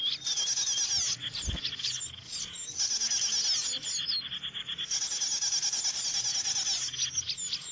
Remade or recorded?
recorded